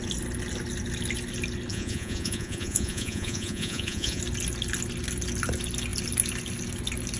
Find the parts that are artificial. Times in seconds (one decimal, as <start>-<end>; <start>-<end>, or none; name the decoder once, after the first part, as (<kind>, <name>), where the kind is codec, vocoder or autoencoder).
1.7-4.2 (vocoder, Vocos)